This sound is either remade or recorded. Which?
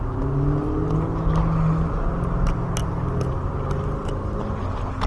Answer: recorded